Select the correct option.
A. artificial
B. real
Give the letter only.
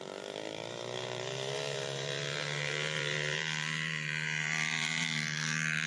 A